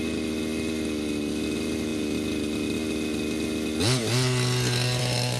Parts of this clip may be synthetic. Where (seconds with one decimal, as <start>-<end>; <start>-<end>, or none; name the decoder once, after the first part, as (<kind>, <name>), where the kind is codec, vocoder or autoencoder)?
none